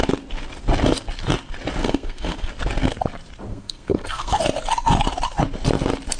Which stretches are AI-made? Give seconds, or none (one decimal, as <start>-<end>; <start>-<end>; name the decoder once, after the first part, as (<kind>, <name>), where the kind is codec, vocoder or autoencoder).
1.8-2.5 (codec, SNAC); 3.5-4.4